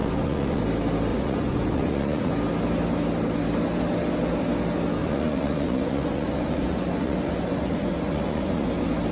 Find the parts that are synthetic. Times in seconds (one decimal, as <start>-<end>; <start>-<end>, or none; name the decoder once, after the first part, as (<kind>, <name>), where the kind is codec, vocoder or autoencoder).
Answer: 0.0-0.6 (vocoder, Vocos); 1.1-2.3; 5.0-8.7